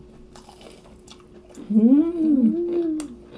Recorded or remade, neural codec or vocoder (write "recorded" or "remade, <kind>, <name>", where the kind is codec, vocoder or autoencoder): recorded